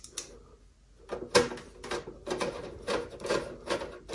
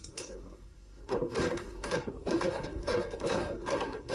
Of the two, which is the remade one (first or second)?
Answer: second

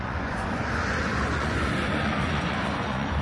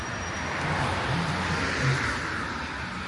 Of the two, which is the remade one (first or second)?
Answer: first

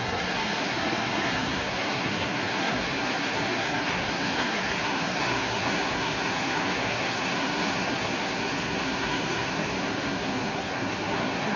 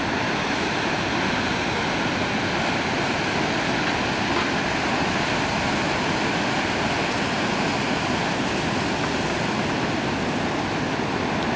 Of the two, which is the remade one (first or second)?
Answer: first